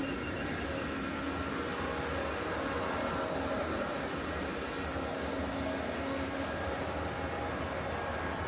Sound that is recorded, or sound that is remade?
recorded